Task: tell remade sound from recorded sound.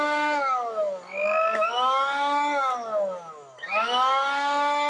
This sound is remade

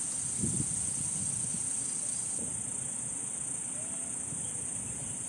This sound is recorded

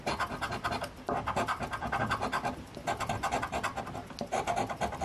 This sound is recorded